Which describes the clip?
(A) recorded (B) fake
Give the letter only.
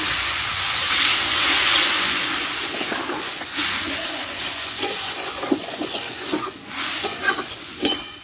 B